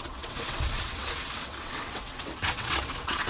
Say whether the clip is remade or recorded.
remade